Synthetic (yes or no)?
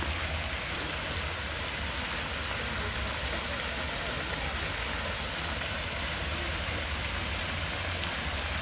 no